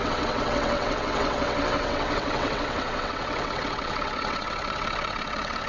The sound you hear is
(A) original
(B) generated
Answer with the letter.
B